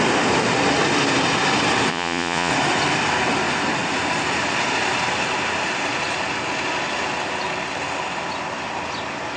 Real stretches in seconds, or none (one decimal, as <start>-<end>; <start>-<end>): 0.0-1.9; 2.5-9.4